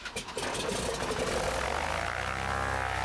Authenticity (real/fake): real